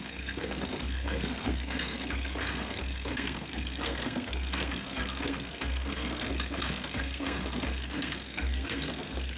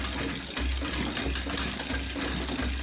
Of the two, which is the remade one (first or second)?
first